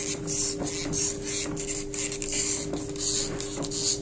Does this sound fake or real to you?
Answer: real